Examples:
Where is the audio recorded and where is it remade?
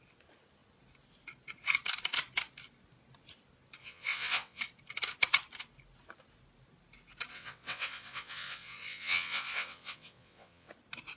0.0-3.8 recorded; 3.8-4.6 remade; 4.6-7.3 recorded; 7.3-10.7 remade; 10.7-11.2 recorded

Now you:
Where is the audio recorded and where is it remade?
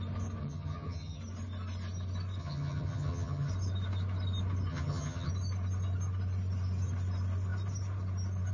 0.0-0.4 recorded; 0.4-1.2 remade; 1.2-2.4 recorded; 2.4-3.5 remade; 3.5-4.7 recorded; 4.7-5.3 remade; 5.3-8.5 recorded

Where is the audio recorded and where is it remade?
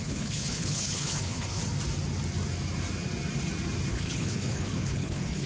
0.0-1.6 remade; 1.6-3.9 recorded; 3.9-5.5 remade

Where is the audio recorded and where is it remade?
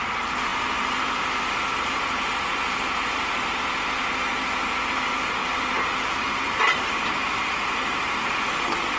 0.0-9.0 remade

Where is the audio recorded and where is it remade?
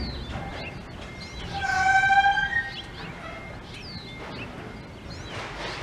0.0-5.8 recorded